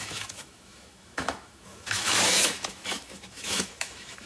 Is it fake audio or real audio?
fake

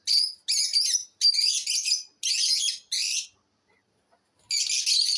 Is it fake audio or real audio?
real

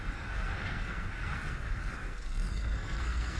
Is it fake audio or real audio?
fake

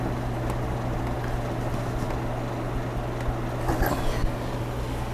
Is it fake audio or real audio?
real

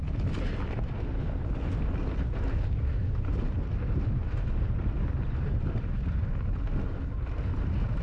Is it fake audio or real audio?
real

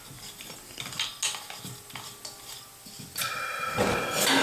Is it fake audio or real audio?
real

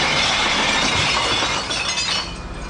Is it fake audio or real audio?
real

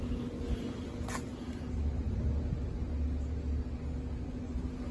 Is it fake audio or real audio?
real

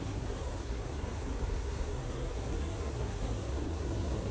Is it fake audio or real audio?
fake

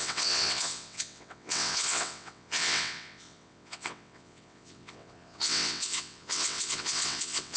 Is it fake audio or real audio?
fake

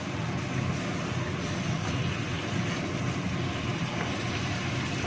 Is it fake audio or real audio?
real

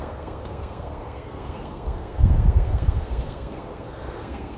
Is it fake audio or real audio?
fake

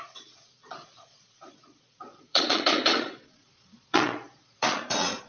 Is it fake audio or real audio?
fake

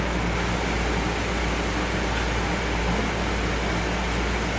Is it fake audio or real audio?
real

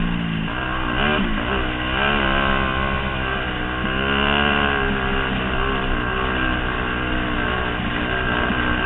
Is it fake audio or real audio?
real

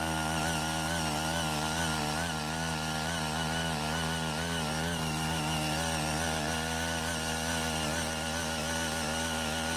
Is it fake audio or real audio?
real